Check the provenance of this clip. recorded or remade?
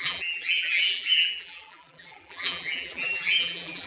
remade